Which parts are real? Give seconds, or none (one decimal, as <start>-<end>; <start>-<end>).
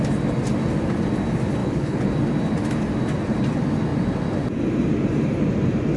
0.0-1.6; 2.1-6.0